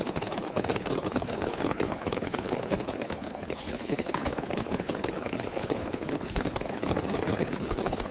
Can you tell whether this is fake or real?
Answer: fake